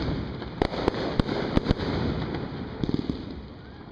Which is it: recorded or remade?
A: recorded